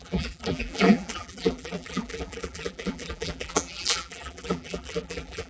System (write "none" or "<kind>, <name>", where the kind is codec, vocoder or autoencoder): vocoder, BigVGAN v2